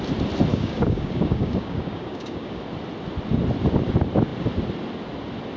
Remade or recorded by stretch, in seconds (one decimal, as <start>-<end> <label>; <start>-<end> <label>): 0.0-0.5 recorded; 0.5-2.6 remade; 2.6-5.6 recorded